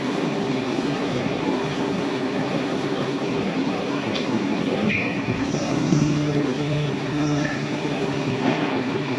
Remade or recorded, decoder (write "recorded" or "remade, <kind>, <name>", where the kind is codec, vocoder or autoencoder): remade, codec, SNAC